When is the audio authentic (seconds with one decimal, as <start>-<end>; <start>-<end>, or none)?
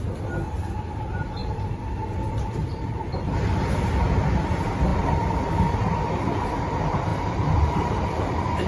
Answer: 0.0-1.4; 3.3-4.9; 5.8-7.1